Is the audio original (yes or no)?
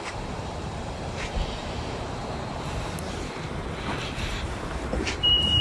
no